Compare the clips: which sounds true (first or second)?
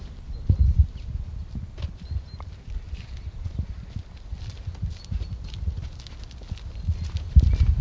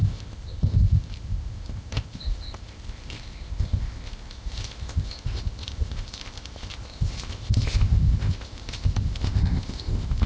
first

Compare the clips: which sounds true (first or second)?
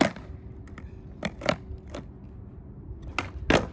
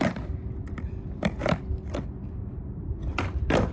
first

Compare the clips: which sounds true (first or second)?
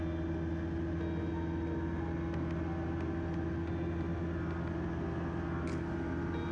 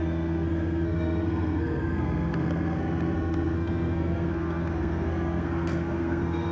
first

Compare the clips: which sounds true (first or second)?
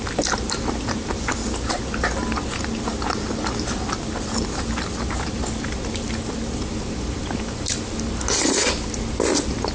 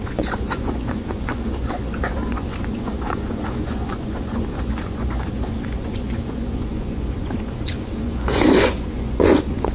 first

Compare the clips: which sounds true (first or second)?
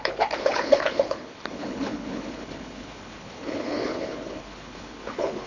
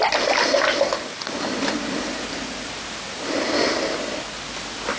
second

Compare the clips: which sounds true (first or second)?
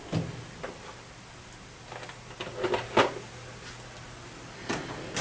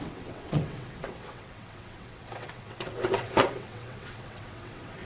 first